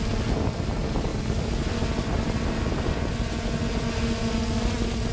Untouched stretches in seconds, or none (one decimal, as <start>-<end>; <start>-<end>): 0.0-5.1